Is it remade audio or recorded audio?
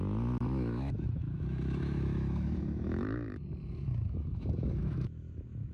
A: remade